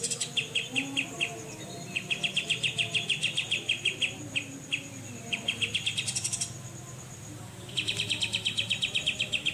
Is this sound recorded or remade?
recorded